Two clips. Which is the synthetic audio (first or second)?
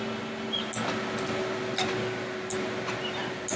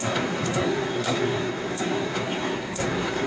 second